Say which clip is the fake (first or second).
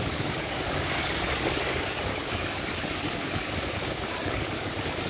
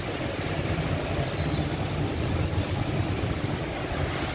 first